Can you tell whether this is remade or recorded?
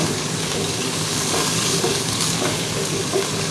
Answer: remade